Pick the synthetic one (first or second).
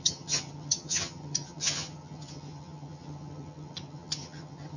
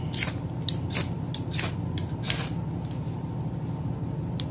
first